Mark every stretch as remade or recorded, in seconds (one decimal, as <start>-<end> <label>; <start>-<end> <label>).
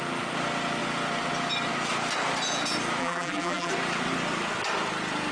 0.0-3.0 recorded; 3.0-3.7 remade; 3.7-5.3 recorded